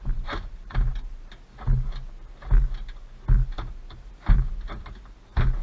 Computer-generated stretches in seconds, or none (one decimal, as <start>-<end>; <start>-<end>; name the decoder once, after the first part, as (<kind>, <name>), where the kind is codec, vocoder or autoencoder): 0.0-0.9 (vocoder, BigVGAN v2); 4.3-5.6